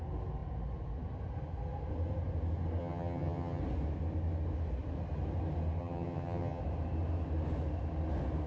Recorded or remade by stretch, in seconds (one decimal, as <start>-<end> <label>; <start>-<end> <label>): 0.0-2.8 recorded; 2.8-3.6 remade; 3.6-5.8 recorded; 5.8-6.6 remade; 6.6-8.5 recorded